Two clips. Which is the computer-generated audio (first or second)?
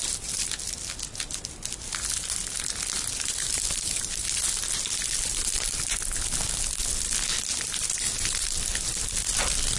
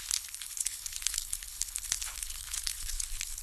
second